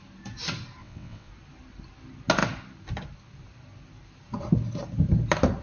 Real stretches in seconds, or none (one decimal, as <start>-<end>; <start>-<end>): 0.0-0.8; 1.3-5.6